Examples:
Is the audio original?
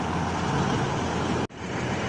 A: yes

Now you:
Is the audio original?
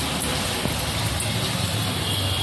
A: yes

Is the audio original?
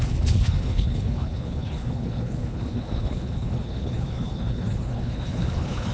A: no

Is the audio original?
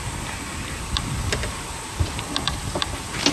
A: yes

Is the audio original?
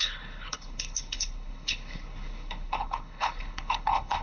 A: no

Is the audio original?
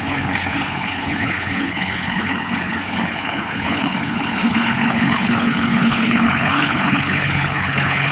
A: no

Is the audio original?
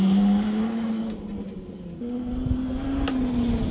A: yes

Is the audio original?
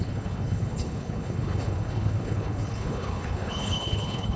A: no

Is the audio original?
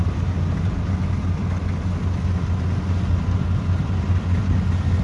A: yes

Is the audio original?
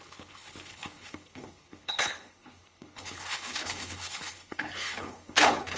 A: no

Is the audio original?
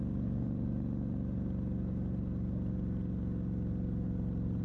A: yes